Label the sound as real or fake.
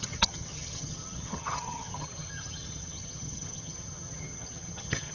fake